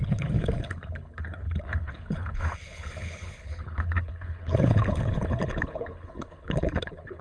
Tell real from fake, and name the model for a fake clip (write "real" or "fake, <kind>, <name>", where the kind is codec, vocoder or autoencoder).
fake, codec, HILCodec